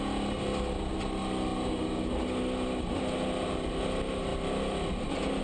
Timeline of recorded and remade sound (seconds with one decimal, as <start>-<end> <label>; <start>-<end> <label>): 0.0-5.4 recorded